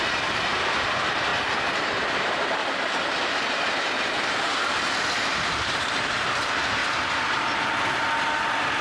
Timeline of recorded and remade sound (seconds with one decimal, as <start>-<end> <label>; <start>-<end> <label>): 0.0-1.3 remade; 1.3-2.0 recorded; 2.0-2.6 remade; 2.6-4.0 recorded; 4.0-6.8 remade; 6.8-8.8 recorded